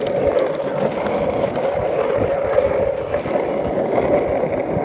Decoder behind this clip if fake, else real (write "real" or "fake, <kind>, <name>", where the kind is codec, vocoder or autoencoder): real